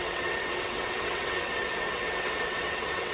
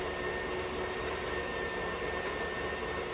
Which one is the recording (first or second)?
second